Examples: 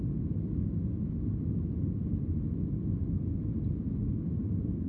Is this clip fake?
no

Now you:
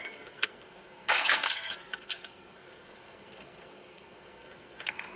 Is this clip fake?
yes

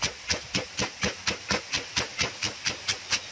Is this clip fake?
no